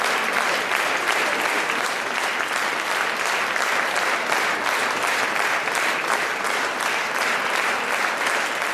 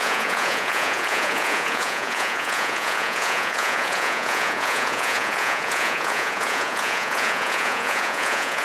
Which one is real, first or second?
first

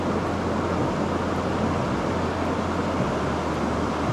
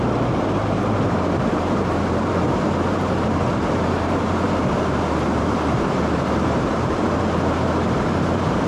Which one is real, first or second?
first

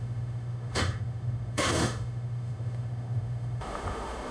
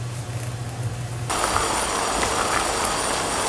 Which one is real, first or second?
second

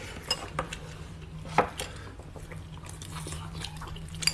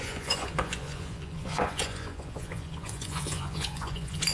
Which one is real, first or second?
first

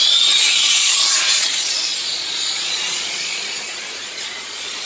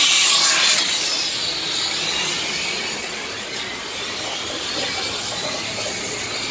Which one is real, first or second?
second